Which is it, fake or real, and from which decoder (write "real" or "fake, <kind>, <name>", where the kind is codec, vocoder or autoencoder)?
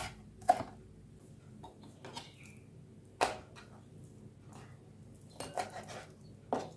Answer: real